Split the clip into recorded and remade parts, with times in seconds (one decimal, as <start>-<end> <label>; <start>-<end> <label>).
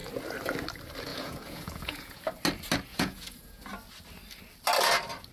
0.0-1.1 recorded; 1.1-2.2 remade; 2.2-2.9 recorded; 2.9-3.6 remade; 3.6-5.3 recorded